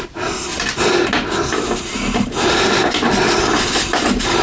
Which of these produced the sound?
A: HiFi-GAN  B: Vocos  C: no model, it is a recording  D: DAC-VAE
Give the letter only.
C